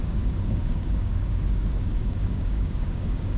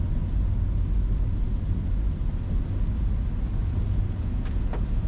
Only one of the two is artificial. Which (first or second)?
first